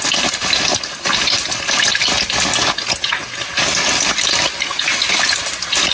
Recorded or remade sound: recorded